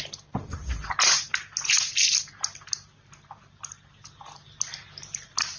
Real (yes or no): yes